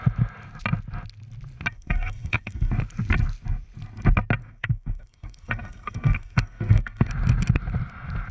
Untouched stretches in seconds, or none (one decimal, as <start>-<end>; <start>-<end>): 0.0-1.7; 2.7-4.4; 7.1-8.3